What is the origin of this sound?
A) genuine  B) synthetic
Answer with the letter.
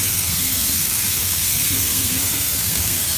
B